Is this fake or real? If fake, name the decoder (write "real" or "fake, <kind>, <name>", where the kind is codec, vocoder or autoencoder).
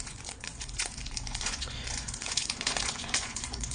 fake, vocoder, Vocos